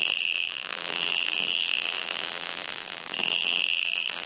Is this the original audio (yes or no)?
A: no